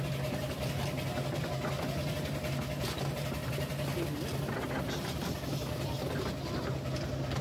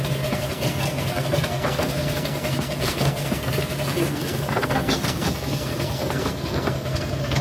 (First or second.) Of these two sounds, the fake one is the second